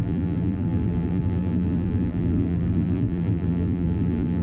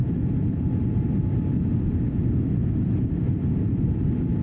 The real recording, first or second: second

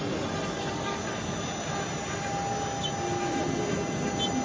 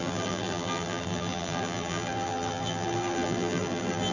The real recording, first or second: first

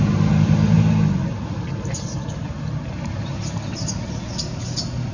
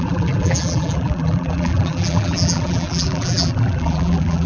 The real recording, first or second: first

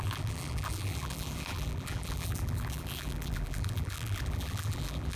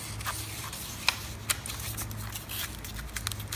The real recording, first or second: second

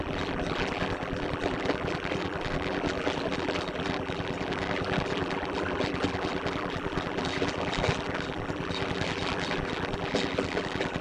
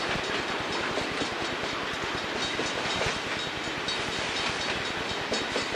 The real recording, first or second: second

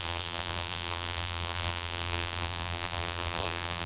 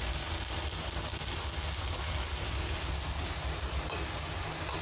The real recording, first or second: second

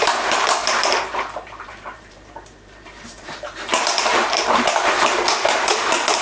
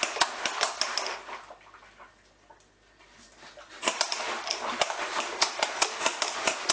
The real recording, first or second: second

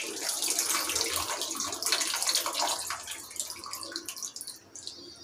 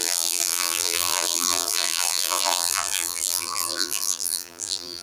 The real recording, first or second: first